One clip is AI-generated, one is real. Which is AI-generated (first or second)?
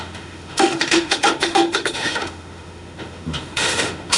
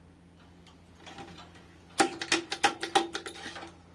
first